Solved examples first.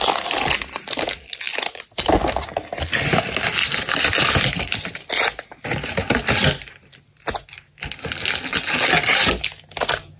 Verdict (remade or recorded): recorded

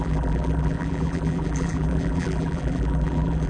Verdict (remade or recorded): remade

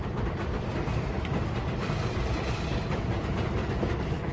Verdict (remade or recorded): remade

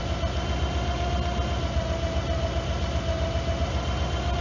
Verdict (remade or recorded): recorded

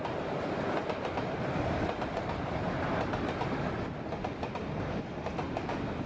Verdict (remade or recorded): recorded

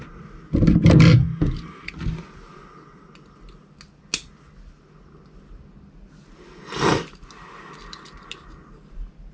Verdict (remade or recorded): recorded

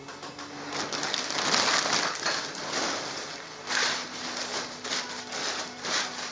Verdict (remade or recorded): recorded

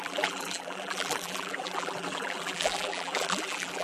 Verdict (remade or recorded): remade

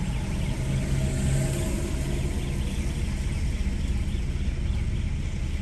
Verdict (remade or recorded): recorded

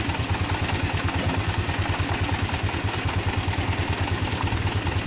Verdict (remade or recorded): recorded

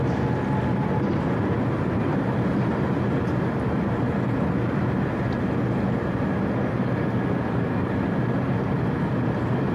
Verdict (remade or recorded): recorded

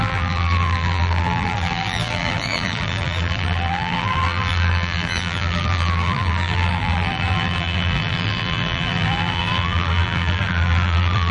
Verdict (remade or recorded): remade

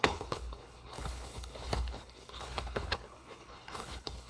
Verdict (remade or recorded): remade